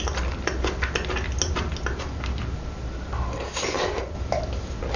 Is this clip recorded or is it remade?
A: recorded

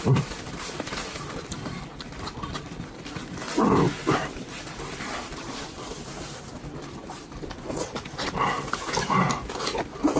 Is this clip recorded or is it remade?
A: remade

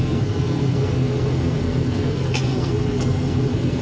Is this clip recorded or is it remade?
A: remade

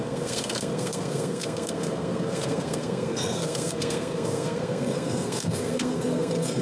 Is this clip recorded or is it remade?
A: remade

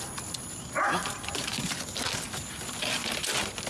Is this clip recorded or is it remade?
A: recorded